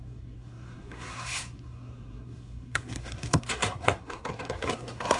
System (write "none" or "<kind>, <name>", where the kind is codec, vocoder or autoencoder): codec, SNAC